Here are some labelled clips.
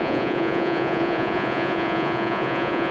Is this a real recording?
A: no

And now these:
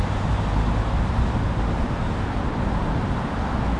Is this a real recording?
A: yes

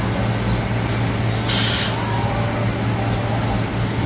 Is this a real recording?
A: yes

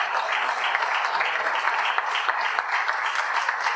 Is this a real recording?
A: yes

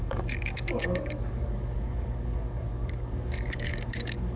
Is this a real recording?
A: no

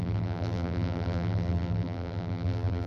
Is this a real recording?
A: no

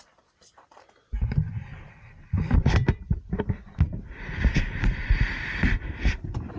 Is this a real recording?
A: no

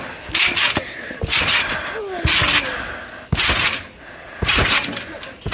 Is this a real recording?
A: yes